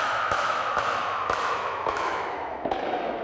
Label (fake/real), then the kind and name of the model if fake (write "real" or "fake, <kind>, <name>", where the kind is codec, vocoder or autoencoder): fake, autoencoder, DAC-VAE